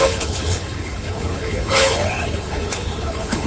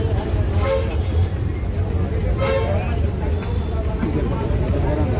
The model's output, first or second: first